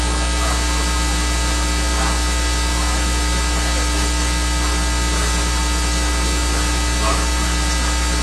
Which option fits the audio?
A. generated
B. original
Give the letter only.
B